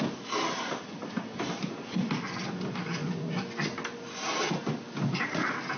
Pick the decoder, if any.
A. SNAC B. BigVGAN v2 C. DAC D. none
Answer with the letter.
D